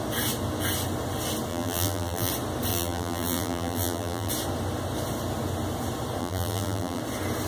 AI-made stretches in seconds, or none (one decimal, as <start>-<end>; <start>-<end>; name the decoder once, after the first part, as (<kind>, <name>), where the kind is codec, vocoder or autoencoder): 1.5-2.3 (vocoder, BigVGAN v2); 2.7-4.3; 6.2-7.0